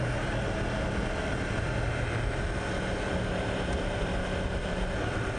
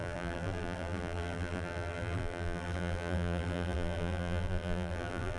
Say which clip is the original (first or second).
first